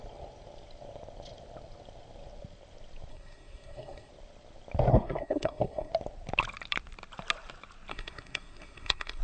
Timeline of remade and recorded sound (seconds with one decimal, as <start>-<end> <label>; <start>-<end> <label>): 0.0-3.1 recorded; 3.1-4.1 remade; 4.1-4.9 recorded; 4.9-5.9 remade; 5.9-7.9 recorded; 7.9-9.2 remade